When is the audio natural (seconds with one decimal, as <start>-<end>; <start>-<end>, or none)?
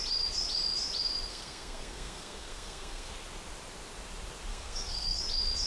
0.0-1.3; 3.1-4.5; 5.2-5.7